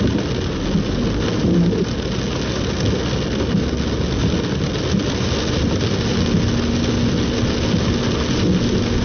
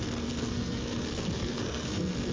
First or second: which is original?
first